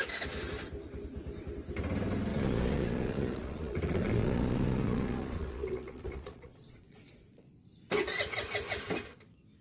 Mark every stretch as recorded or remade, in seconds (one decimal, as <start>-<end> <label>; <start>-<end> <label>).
0.0-2.3 recorded; 2.3-7.5 remade; 7.5-9.6 recorded